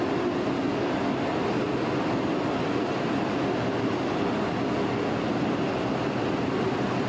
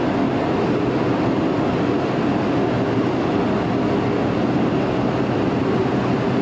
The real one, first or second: second